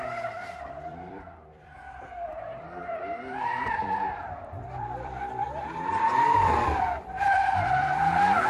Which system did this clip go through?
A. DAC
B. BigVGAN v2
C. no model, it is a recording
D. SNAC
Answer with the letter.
B